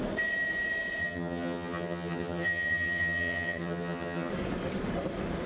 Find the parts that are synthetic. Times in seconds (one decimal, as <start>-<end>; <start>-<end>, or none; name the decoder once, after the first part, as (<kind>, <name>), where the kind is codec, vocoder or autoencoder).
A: 1.0-4.3 (vocoder, HiFi-GAN)